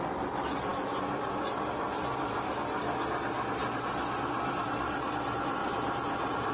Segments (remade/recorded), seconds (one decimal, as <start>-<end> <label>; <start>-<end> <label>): 0.0-5.6 recorded; 5.6-6.5 remade